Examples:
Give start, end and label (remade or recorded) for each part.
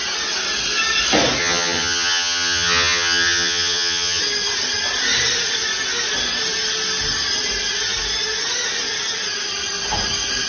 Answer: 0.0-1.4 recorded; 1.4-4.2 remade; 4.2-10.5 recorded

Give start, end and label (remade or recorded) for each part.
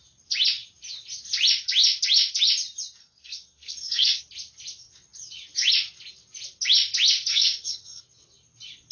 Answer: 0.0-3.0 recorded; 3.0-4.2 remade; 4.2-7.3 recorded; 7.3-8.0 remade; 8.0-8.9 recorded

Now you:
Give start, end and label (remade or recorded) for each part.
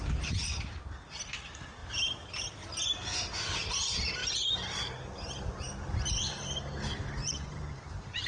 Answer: 0.0-7.2 recorded; 7.2-8.3 remade